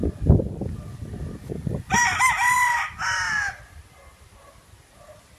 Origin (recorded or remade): recorded